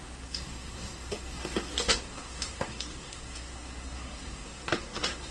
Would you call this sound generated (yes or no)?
yes